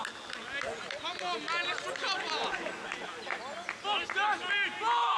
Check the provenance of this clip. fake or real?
real